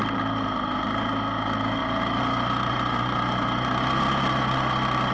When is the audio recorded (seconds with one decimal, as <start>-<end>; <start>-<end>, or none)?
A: 0.0-5.1